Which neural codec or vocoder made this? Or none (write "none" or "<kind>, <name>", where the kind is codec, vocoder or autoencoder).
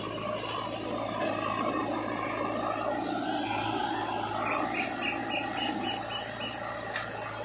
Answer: none